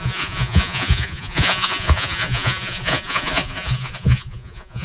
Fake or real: fake